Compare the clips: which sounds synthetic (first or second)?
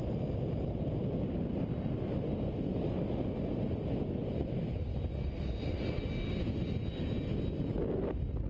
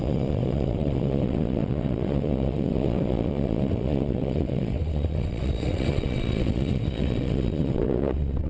second